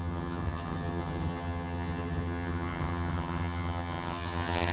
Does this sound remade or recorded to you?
remade